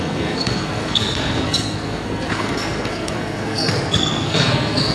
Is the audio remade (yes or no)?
yes